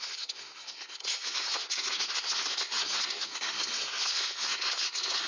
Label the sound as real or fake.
fake